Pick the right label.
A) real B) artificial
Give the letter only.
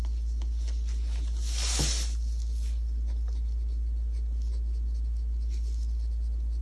A